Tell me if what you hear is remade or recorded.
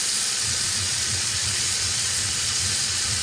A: remade